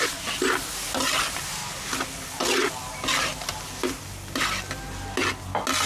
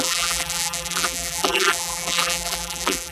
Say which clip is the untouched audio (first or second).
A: first